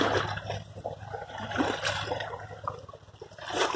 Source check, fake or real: real